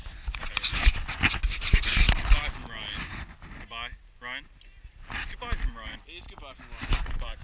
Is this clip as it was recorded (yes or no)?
yes